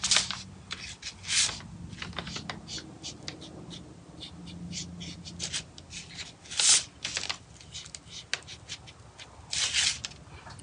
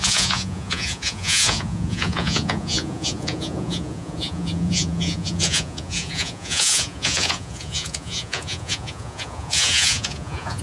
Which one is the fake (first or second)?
second